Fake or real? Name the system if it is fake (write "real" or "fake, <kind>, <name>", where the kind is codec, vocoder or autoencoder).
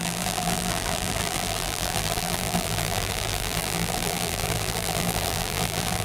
fake, vocoder, BigVGAN v2